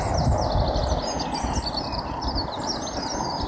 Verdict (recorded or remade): recorded